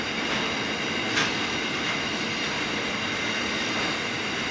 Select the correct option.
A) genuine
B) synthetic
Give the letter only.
A